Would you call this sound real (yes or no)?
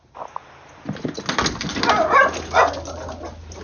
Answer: yes